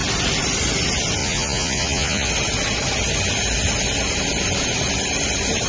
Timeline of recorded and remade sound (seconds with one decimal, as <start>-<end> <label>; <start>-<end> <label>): 0.0-1.2 recorded; 1.2-2.3 remade; 2.3-5.7 recorded